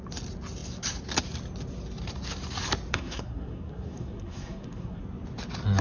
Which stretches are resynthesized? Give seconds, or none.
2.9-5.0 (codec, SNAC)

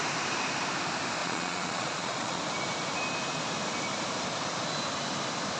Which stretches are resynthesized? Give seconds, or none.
1.2-2.4 (vocoder, Vocos)

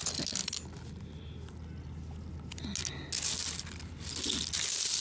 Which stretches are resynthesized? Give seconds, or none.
none

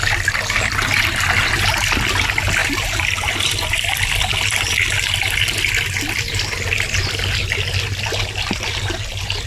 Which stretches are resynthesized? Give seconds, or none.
2.6-3.4 (vocoder, BigVGAN v2)

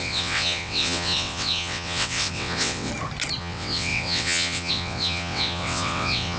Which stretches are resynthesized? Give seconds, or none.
0.0-2.9 (vocoder, WaveNeXt); 3.4-6.4

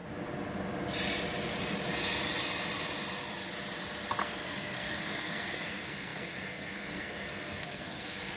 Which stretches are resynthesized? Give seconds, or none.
4.2-8.4 (codec, SNAC)

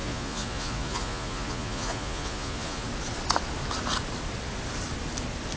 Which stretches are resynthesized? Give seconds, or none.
0.0-2.9 (vocoder, Vocos)